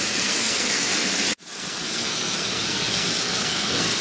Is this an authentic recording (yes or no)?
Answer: no